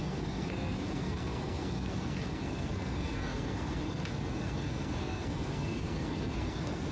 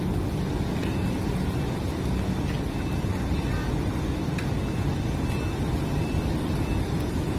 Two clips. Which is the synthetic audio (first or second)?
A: first